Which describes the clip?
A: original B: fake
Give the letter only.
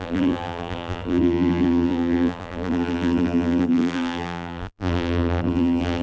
B